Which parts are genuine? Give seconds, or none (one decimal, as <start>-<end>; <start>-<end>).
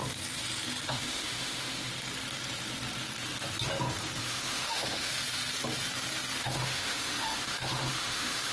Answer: 0.0-0.9; 1.9-4.2; 5.1-6.4